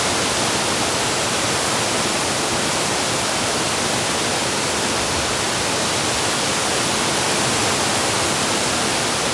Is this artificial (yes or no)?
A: no